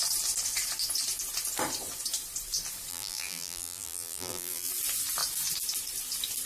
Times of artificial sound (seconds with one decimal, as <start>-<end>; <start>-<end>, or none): 2.9-4.7